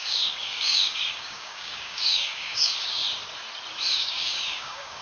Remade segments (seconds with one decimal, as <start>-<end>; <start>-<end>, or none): 0.0-3.0; 3.9-5.0